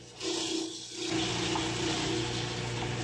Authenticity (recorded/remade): recorded